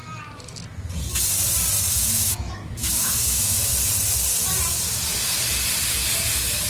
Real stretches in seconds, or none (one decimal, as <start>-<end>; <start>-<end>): 0.0-1.9; 3.7-6.3